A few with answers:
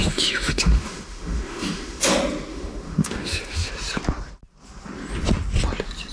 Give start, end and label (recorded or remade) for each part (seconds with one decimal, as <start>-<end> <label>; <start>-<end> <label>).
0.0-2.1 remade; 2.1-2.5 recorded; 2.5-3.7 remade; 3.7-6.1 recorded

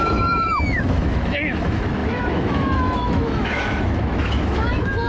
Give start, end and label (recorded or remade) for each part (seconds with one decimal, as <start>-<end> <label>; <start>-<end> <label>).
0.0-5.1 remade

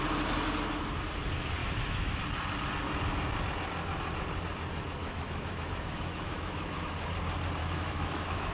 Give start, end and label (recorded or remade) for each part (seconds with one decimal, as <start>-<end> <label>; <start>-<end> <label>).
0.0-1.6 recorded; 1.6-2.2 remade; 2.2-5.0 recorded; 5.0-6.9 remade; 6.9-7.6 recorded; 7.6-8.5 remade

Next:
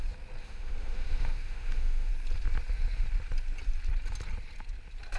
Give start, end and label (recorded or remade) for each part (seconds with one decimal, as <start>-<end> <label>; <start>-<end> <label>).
0.0-0.4 recorded; 0.4-2.1 remade; 2.1-5.2 recorded

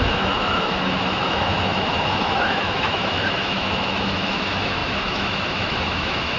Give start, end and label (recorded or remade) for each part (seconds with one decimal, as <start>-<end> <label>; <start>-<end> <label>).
0.0-6.4 remade

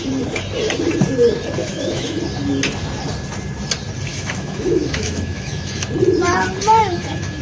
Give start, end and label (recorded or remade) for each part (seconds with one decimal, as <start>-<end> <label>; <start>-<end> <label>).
0.0-1.6 recorded; 1.6-2.2 remade; 2.2-4.1 recorded; 4.1-5.9 remade; 5.9-6.8 recorded; 6.8-7.4 remade

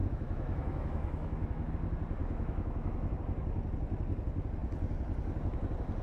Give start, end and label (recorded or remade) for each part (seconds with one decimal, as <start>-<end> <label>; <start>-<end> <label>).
0.0-1.7 remade; 1.7-2.2 recorded; 2.2-3.2 remade; 3.2-6.0 recorded

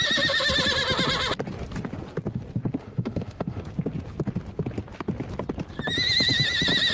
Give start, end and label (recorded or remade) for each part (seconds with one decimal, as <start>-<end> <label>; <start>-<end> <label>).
0.0-2.8 recorded; 2.8-3.6 remade; 3.6-6.9 recorded